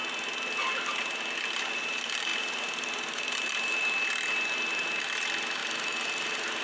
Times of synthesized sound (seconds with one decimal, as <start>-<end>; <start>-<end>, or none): 5.6-6.6

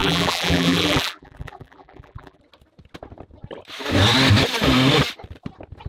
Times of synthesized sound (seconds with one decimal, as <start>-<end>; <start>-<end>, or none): 0.0-2.4

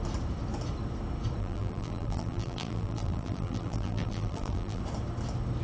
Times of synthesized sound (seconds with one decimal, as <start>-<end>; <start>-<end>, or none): 1.4-4.8

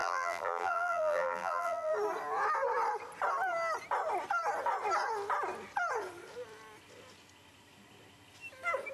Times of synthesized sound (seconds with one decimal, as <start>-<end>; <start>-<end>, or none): 0.0-1.9

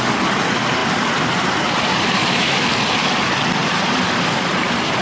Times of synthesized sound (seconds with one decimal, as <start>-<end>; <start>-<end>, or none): 0.8-2.6; 3.6-5.0

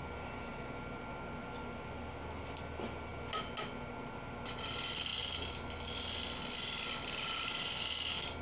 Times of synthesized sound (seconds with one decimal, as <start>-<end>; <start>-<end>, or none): none

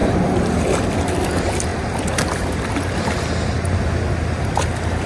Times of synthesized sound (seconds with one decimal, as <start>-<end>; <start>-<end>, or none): 0.0-0.6